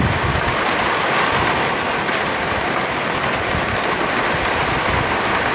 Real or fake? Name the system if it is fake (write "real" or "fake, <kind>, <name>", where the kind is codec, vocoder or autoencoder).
real